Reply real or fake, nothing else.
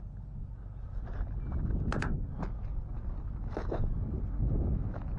real